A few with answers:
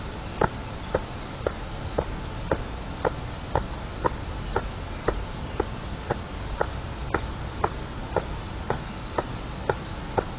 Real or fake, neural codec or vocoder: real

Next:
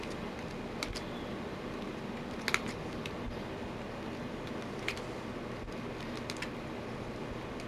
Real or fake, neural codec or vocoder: real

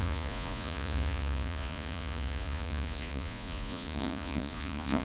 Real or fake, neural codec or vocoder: fake, vocoder, Vocos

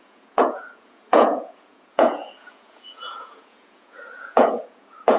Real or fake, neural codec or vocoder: fake, vocoder, Vocos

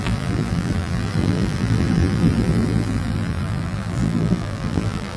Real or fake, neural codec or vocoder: fake, vocoder, BigVGAN v2